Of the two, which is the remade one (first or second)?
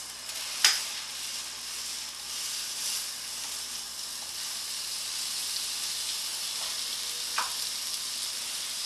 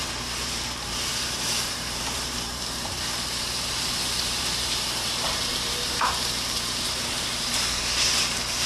second